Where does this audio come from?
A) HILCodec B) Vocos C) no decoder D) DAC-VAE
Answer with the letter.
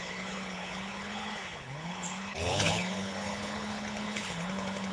A